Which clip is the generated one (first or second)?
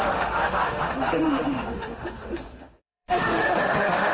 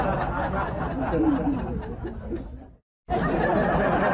first